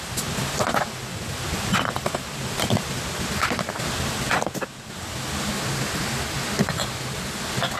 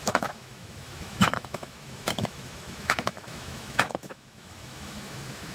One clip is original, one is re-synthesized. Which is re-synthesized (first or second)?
second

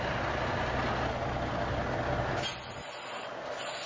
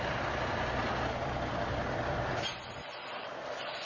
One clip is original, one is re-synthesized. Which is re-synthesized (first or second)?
second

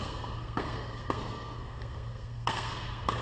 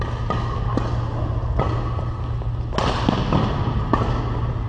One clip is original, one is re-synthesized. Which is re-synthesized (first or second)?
first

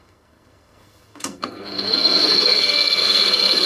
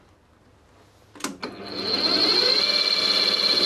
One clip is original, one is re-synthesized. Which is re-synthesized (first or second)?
first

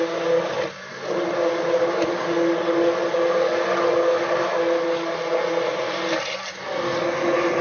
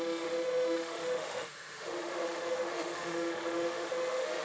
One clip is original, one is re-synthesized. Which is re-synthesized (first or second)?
second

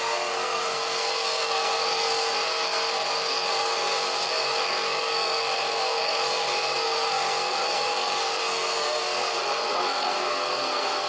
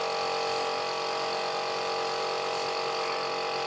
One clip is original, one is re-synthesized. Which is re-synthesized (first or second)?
first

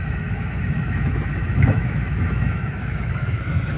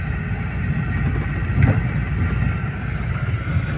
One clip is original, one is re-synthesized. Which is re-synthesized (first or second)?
first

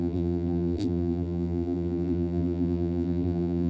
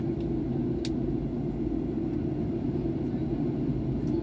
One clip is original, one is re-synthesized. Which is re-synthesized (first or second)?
first